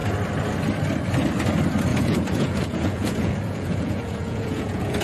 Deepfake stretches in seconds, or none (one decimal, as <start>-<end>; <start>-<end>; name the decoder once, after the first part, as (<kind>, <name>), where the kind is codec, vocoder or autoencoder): 1.9-5.0 (vocoder, Vocos)